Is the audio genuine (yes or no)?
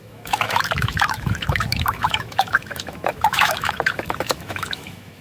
no